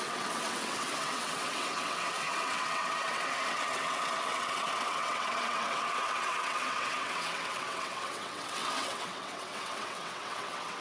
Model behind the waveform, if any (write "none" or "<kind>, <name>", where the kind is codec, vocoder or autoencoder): vocoder, WaveNeXt